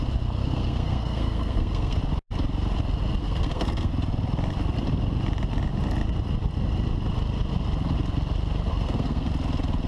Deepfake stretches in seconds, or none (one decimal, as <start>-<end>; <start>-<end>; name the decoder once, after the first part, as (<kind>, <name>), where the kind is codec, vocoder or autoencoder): 0.4-2.0 (codec, SNAC); 3.2-3.9; 8.7-9.3